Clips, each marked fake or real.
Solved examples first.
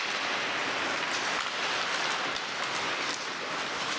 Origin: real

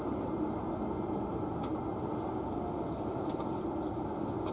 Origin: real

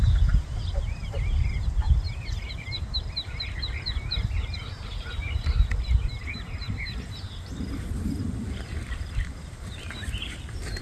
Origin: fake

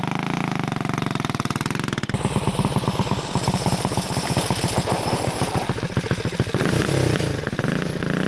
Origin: real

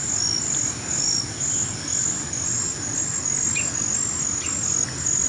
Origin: real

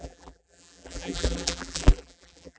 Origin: fake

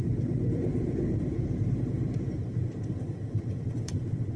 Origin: fake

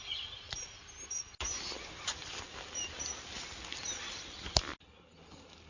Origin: real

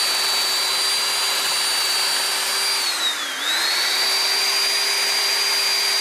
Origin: real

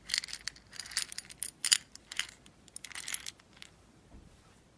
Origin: real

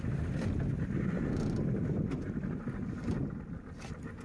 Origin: real